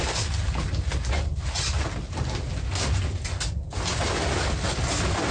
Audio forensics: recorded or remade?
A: recorded